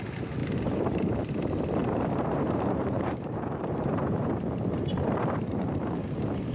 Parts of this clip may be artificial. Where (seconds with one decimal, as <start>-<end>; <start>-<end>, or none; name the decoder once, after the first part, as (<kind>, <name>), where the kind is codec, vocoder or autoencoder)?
0.4-1.2 (vocoder, BigVGAN v2); 1.8-5.7